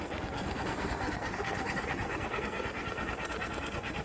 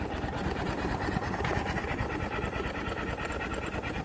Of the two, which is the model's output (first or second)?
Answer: first